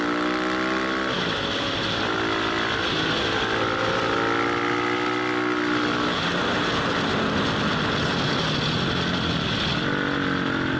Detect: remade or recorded recorded